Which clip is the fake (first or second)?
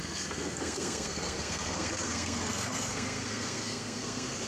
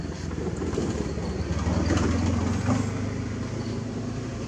first